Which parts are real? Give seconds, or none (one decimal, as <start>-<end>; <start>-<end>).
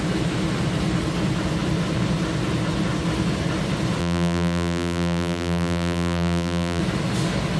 0.0-4.0; 6.8-7.6